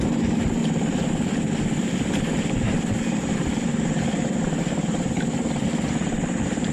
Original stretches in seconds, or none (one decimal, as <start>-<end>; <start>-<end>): 0.6-4.6